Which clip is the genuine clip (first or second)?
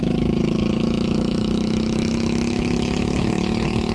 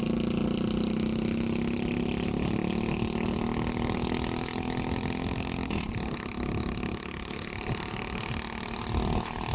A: second